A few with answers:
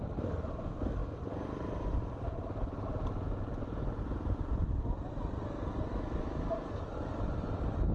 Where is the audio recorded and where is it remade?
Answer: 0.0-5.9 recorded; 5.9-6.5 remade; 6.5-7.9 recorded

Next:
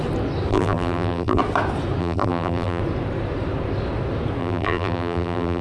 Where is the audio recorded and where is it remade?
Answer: 0.0-0.5 recorded; 0.5-1.4 remade; 1.4-2.0 recorded; 2.0-2.8 remade; 2.8-4.4 recorded; 4.4-5.6 remade